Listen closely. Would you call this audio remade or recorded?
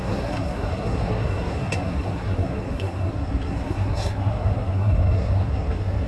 remade